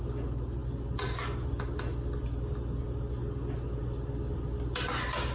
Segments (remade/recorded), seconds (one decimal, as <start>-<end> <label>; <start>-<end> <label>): 0.0-5.3 recorded